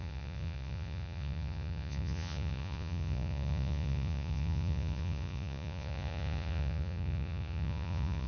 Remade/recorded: remade